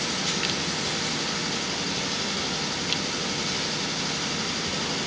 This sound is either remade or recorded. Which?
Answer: recorded